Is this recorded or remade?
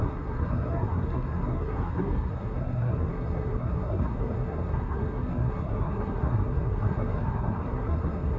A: remade